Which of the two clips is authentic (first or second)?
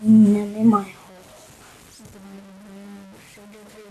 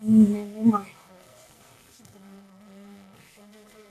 first